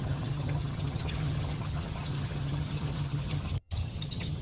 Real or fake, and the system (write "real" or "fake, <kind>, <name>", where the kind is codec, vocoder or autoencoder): fake, vocoder, HiFi-GAN